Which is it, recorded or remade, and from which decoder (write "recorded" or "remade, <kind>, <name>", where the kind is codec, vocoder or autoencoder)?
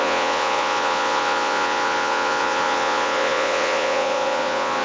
remade, vocoder, Vocos